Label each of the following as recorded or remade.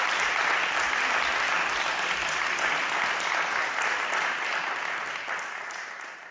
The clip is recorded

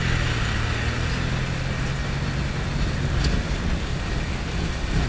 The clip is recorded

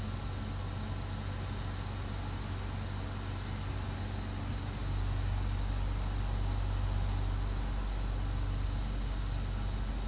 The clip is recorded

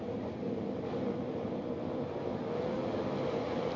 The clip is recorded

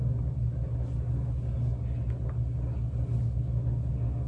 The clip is recorded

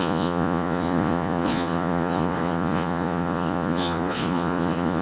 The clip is remade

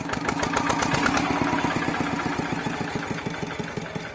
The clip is recorded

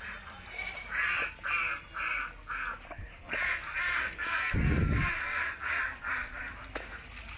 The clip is recorded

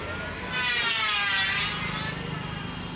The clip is recorded